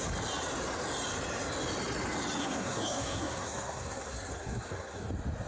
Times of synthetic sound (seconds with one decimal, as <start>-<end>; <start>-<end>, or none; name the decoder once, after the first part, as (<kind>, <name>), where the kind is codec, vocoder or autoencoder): 2.4-5.1 (codec, SNAC)